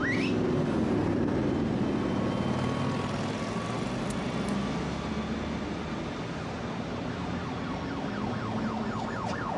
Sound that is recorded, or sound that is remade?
recorded